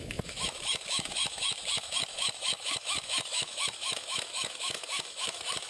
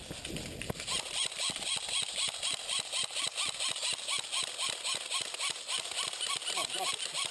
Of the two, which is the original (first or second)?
second